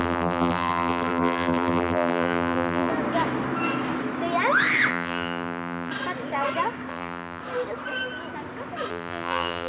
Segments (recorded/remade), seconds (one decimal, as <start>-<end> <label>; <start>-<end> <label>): 0.0-2.9 remade; 2.9-4.9 recorded; 4.9-5.9 remade; 5.9-6.9 recorded; 6.9-7.4 remade; 7.4-8.9 recorded; 8.9-9.7 remade